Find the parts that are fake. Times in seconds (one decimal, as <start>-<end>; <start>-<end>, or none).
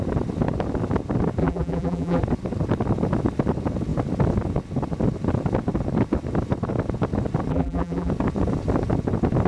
1.4-2.2; 7.5-8.1